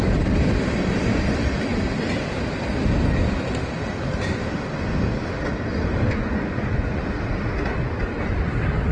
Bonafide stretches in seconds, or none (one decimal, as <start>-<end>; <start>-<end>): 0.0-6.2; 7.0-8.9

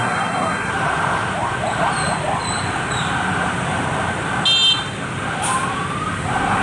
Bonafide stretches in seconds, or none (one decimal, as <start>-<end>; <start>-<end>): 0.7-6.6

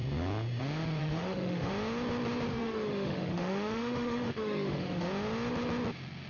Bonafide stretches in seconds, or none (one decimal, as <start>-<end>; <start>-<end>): 0.0-1.0; 1.7-2.5; 5.1-6.3